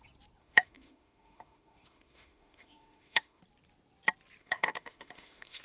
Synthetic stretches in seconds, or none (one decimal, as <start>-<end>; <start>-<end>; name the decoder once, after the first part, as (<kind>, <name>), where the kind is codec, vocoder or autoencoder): 0.4-3.4 (autoencoder, DAC-VAE); 4.4-5.6